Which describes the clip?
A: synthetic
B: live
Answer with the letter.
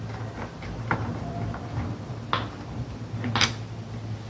B